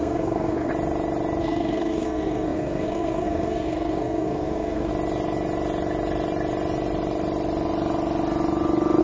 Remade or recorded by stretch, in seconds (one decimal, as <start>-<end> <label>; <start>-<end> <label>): 0.0-0.7 remade; 0.7-1.4 recorded; 1.4-4.9 remade; 4.9-9.0 recorded